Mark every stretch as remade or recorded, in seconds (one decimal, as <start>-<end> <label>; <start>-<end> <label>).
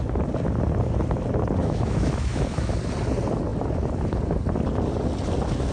0.0-1.6 recorded; 1.6-2.7 remade; 2.7-5.7 recorded